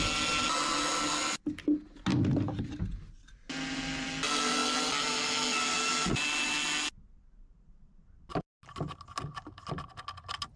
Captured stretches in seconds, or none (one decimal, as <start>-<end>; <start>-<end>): 0.0-10.6